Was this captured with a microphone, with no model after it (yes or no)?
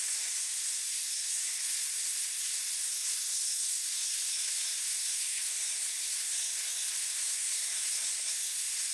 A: no